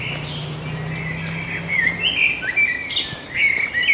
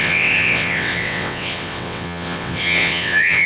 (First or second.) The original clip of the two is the first